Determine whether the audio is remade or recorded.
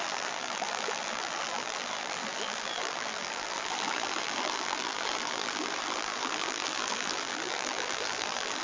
remade